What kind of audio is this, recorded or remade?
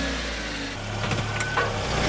recorded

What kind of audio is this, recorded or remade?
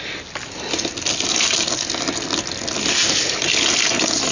recorded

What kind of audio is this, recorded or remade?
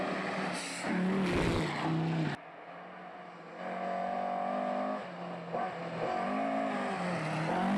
recorded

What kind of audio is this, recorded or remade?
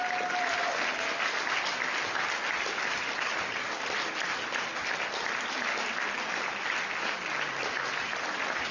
recorded